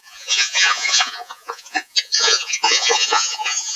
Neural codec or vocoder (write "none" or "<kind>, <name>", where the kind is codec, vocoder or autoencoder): vocoder, Vocos